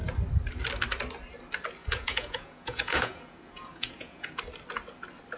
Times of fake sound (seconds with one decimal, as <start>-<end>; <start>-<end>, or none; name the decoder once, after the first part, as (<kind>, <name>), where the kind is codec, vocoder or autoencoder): 1.8-4.4 (vocoder, Vocos)

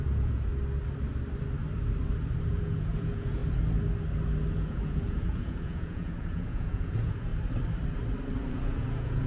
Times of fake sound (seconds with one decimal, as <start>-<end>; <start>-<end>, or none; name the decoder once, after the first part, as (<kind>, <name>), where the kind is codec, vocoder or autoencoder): 0.0-0.5 (vocoder, Vocos); 2.5-3.4; 4.5-7.3; 8.5-9.3